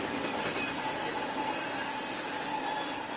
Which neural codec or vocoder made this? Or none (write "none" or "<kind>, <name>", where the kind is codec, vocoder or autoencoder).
none